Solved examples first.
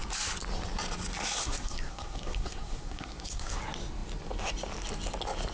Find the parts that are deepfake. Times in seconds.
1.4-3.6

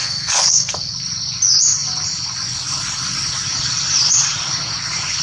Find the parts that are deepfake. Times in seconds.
0.0-0.9

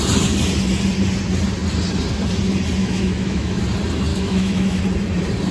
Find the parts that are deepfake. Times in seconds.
2.8-3.6; 4.1-4.8